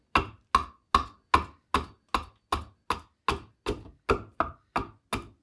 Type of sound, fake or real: real